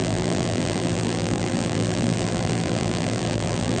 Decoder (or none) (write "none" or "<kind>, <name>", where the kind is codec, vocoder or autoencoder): vocoder, BigVGAN v2